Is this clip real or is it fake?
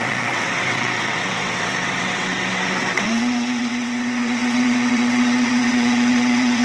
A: fake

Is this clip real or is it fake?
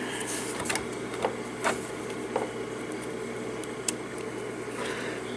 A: real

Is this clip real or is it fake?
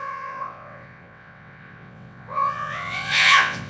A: fake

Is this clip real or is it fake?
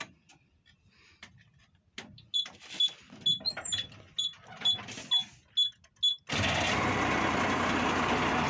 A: real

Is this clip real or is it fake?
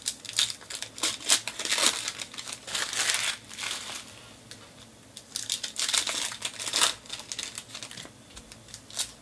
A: real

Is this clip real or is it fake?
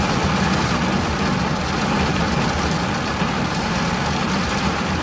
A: real